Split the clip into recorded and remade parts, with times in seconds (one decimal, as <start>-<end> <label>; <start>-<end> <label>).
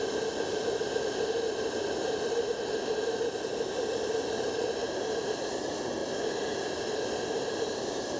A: 0.0-8.2 recorded